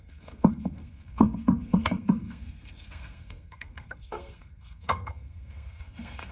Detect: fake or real fake